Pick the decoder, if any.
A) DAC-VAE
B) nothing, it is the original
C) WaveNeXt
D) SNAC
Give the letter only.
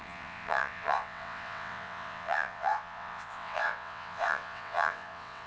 C